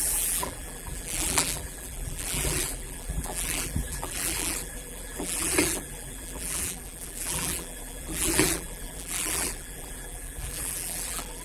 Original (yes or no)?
no